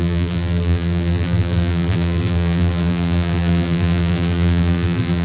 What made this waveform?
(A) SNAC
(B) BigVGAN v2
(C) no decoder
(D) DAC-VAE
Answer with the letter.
B